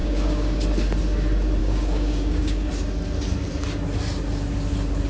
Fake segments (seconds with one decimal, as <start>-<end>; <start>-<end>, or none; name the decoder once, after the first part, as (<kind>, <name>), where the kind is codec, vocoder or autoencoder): 0.0-0.6 (codec, DAC); 1.6-2.7